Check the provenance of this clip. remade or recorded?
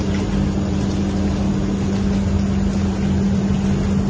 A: recorded